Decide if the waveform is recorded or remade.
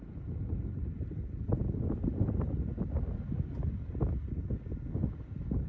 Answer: recorded